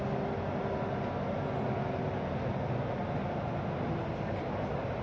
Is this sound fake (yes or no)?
no